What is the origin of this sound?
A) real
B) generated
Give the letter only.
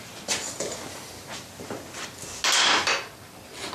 A